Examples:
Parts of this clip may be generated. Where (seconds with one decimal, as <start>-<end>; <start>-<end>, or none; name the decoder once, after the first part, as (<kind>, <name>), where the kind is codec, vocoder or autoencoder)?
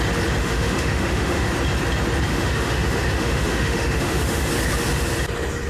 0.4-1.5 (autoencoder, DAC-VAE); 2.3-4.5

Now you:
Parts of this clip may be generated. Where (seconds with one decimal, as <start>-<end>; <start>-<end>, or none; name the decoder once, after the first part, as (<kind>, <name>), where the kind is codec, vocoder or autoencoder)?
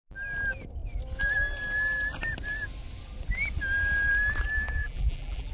4.8-5.5 (vocoder, BigVGAN v2)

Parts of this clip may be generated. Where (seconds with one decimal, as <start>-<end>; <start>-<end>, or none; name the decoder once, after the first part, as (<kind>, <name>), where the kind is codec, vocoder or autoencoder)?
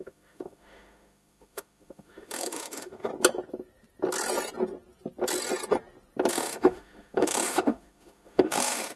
0.0-3.1 (autoencoder, DAC-VAE); 6.3-9.0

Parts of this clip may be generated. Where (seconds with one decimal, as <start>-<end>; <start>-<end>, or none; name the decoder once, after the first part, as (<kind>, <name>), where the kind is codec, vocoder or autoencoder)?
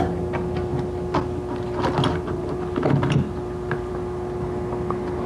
none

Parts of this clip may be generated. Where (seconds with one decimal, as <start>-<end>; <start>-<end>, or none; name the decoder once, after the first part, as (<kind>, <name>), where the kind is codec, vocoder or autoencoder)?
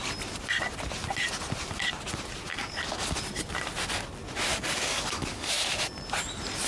2.5-3.2 (codec, DAC); 4.5-5.5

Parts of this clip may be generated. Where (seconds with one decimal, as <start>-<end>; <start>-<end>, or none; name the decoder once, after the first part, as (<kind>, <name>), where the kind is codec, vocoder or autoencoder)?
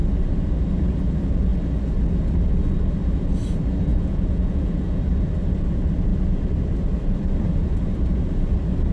3.9-5.0 (vocoder, Vocos)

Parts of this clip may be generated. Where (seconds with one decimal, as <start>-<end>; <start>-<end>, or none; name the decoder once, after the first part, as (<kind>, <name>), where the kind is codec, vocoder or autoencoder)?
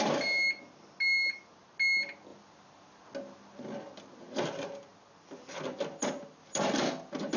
none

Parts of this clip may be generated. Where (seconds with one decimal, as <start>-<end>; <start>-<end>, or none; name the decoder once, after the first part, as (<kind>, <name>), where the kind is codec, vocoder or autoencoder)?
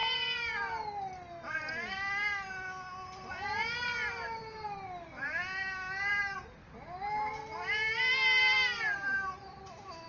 none